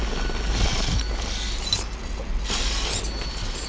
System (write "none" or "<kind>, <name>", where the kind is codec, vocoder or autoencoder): none